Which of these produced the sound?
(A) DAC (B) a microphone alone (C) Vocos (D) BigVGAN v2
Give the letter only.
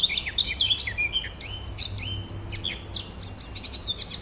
B